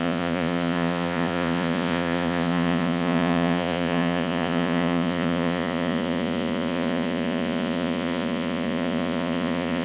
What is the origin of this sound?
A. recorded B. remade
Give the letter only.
B